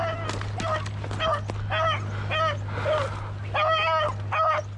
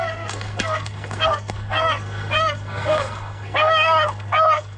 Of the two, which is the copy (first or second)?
second